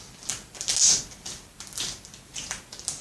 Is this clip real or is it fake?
real